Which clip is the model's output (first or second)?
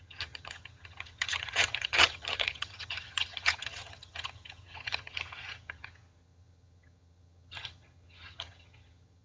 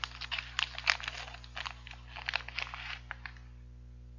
first